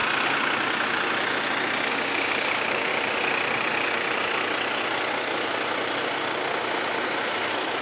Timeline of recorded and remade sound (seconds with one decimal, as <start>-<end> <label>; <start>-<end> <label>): 0.0-1.9 recorded; 1.9-2.9 remade; 2.9-7.8 recorded